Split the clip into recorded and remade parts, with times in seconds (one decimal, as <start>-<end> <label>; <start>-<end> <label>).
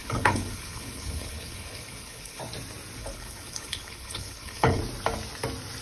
0.0-2.4 remade; 2.4-3.0 recorded; 3.0-4.8 remade; 4.8-5.8 recorded